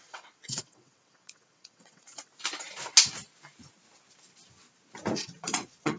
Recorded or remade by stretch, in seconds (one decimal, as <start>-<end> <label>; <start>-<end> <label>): 0.0-2.3 remade; 2.3-5.1 recorded; 5.1-6.0 remade